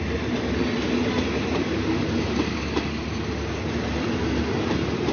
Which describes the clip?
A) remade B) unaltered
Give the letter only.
B